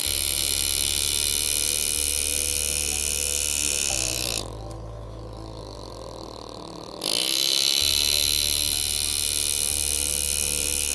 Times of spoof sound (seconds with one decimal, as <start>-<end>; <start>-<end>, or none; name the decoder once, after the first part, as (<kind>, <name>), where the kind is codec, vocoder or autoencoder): none